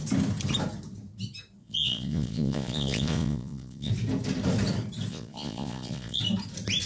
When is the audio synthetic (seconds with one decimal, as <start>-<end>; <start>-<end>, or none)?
1.6-3.9; 5.1-6.2